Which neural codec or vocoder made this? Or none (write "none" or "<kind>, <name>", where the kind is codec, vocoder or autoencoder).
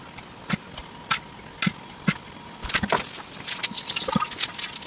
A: none